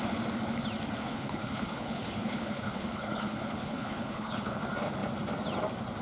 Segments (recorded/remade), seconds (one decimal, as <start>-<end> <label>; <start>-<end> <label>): 0.0-1.0 recorded; 1.0-4.6 remade; 4.6-6.0 recorded